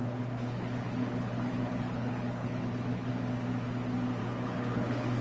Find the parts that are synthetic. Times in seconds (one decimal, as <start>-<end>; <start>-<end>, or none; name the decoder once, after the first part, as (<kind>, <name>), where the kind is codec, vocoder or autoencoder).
0.0-3.1 (codec, HILCodec); 4.2-5.2